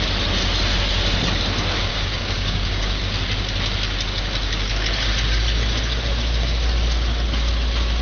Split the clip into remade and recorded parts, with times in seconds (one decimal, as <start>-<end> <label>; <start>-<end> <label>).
0.0-1.9 recorded; 1.9-3.0 remade; 3.0-8.0 recorded